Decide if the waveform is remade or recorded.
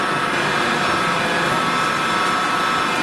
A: recorded